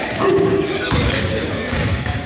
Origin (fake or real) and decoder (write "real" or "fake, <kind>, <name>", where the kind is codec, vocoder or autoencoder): fake, codec, DAC